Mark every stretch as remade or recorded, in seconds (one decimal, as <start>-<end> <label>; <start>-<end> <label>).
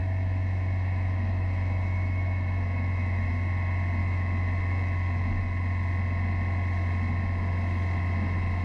0.0-3.3 remade; 3.3-4.0 recorded; 4.0-5.4 remade; 5.4-8.6 recorded